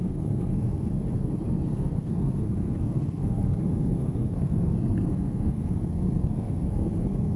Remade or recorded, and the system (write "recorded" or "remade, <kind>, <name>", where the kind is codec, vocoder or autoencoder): remade, codec, SNAC